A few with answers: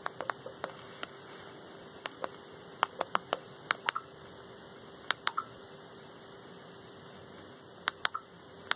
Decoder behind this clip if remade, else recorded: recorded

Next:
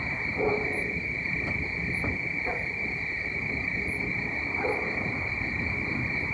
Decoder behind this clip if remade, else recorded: recorded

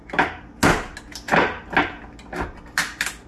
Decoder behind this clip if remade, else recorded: recorded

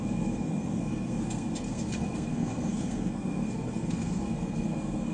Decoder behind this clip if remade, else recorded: remade, codec, SNAC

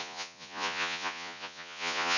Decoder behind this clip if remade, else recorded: remade, vocoder, Vocos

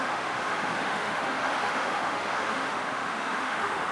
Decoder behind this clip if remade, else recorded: remade, autoencoder, DAC-VAE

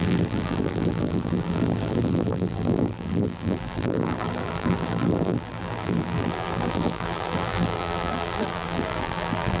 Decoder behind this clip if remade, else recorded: remade, vocoder, BigVGAN v2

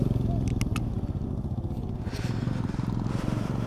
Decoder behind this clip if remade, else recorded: recorded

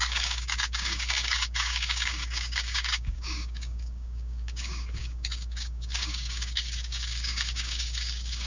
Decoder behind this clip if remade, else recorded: remade, codec, DAC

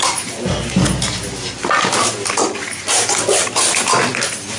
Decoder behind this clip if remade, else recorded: recorded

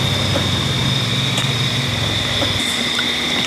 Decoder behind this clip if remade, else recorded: recorded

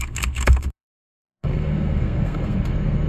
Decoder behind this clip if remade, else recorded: remade, codec, SNAC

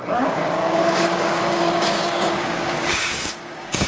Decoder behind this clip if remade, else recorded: remade, codec, DAC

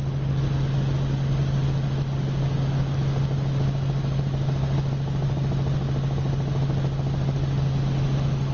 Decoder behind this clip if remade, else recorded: recorded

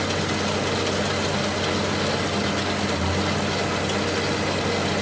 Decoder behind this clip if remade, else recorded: recorded